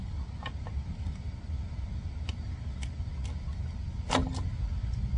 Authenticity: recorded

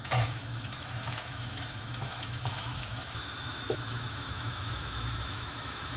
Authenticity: remade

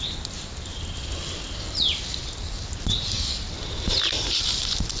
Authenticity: recorded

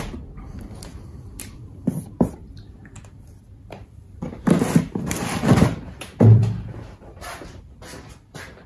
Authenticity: remade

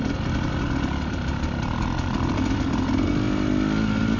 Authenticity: recorded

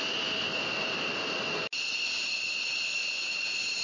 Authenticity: recorded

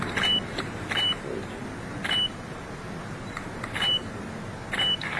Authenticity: recorded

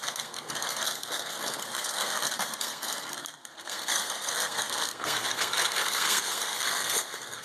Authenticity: remade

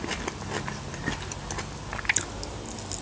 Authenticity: recorded